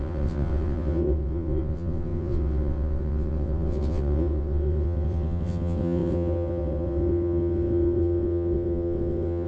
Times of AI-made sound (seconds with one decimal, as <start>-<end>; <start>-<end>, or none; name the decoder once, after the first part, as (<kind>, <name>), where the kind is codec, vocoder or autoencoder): 0.0-9.5 (vocoder, WaveNeXt)